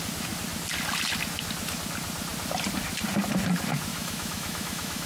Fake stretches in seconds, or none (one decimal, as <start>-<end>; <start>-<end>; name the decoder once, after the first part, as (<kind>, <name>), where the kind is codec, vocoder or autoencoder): 3.9-5.1 (autoencoder, DAC-VAE)